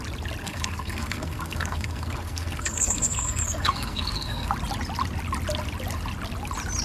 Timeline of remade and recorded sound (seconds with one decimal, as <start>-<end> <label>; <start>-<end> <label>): 0.0-0.4 recorded; 0.4-4.5 remade; 4.5-6.8 recorded